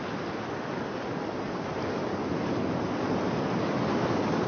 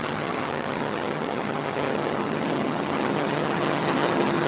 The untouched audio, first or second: first